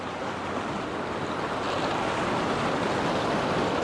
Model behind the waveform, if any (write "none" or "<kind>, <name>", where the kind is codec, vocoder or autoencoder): none